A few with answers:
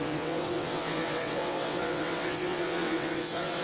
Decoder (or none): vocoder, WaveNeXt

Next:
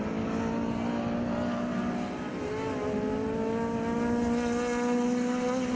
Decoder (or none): none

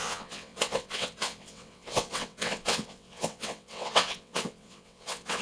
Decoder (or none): vocoder, WaveNeXt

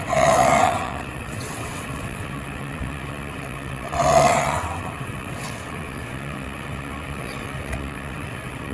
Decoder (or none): vocoder, WaveNeXt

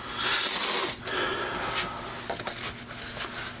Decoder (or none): none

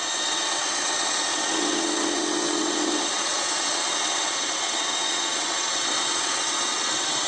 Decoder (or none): vocoder, WaveNeXt